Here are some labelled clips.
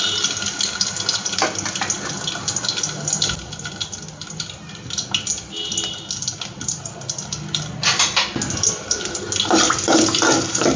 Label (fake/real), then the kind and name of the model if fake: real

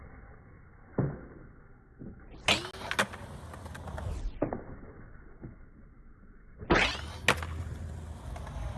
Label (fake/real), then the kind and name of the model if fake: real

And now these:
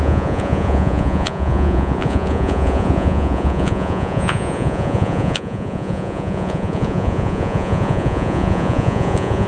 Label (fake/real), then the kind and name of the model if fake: fake, vocoder, Vocos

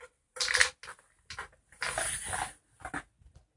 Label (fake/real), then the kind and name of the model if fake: real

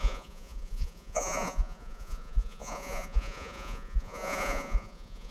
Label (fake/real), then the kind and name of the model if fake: fake, vocoder, Vocos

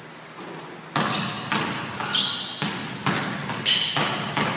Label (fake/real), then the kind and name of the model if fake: real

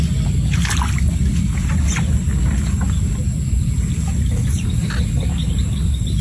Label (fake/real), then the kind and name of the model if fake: real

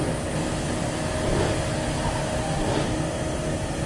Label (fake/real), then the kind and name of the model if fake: real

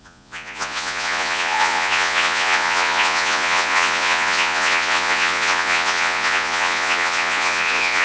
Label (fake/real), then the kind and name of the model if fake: fake, vocoder, Vocos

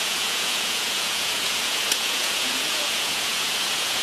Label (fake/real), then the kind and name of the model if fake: fake, vocoder, Vocos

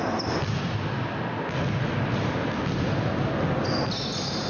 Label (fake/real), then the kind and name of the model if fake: real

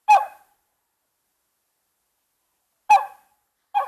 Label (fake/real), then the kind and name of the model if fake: real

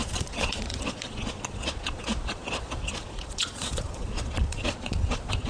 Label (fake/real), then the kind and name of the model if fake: fake, vocoder, Vocos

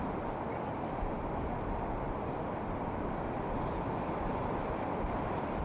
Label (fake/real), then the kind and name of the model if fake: real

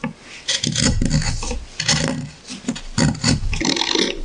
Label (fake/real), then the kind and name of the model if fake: real